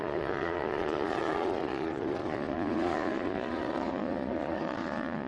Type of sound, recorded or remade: remade